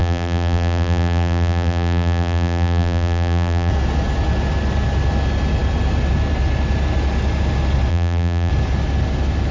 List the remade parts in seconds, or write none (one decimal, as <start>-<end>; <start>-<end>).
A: 0.0-3.7; 7.9-8.5